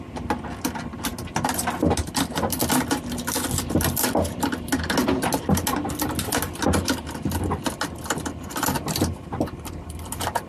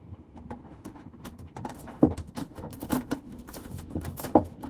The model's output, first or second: second